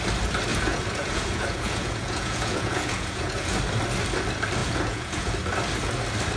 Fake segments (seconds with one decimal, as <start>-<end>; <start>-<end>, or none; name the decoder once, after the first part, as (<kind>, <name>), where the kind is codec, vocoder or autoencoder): 0.5-3.6 (vocoder, Vocos); 4.6-5.3